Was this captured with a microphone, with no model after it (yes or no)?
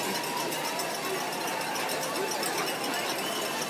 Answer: yes